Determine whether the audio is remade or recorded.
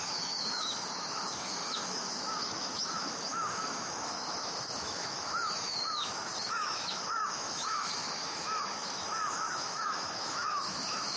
remade